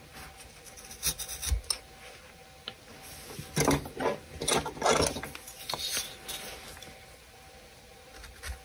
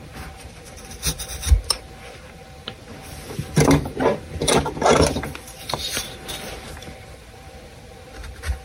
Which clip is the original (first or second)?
first